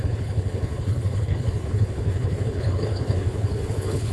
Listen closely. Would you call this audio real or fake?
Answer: fake